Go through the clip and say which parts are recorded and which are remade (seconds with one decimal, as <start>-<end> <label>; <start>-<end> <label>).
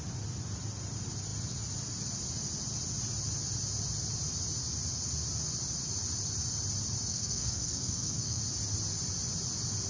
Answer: 0.0-7.1 recorded; 7.1-8.4 remade; 8.4-9.9 recorded